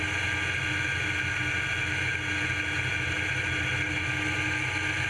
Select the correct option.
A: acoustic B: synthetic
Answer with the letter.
A